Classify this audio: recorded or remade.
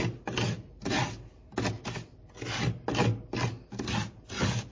recorded